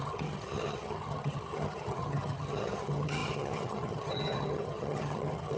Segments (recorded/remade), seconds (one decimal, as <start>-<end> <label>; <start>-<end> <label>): 0.0-5.6 remade